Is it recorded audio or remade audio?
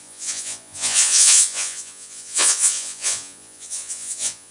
remade